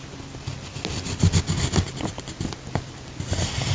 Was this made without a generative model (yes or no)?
yes